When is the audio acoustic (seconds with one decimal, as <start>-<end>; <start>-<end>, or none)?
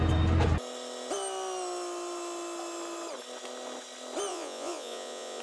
0.0-4.3